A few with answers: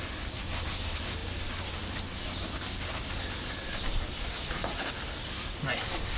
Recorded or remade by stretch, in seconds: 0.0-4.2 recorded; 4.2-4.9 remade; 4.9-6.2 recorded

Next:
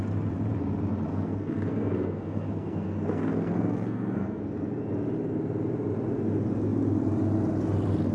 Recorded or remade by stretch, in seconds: 0.0-1.1 recorded; 1.1-4.4 remade; 4.4-8.1 recorded

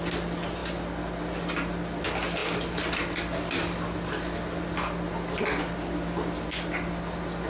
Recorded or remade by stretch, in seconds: 0.0-7.5 recorded

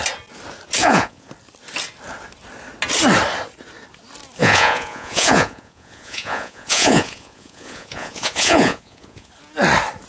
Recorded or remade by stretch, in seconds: 0.0-0.8 recorded; 0.8-1.3 remade; 1.3-4.4 recorded; 4.4-9.3 remade; 9.3-10.1 recorded

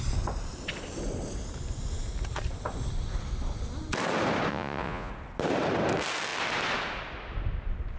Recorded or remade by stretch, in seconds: 0.0-4.5 recorded; 4.5-5.1 remade; 5.1-8.0 recorded

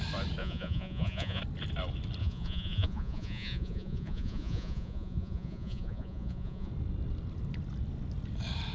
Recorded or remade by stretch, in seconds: 0.0-0.4 recorded; 0.4-1.4 remade; 1.4-2.2 recorded; 2.2-6.7 remade; 6.7-8.7 recorded